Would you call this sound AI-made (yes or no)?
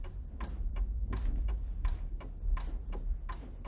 no